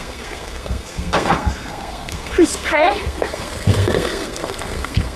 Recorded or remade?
remade